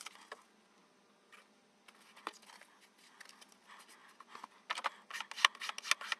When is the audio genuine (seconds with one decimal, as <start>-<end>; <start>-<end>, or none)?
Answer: 0.0-6.2